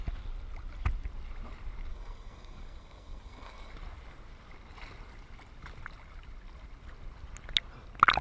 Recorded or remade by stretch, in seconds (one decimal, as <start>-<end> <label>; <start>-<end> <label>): 0.0-1.9 recorded; 1.9-3.7 remade; 3.7-8.2 recorded